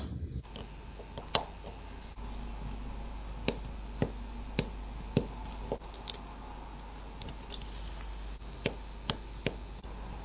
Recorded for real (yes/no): yes